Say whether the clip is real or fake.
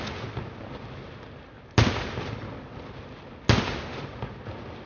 real